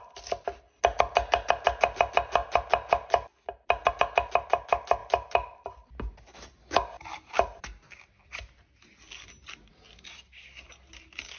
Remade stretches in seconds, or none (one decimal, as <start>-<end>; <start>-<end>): none